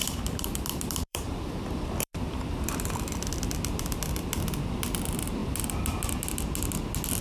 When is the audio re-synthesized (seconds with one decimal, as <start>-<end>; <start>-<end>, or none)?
0.0-4.3; 5.4-6.1